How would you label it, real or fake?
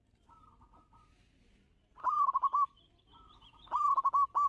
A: real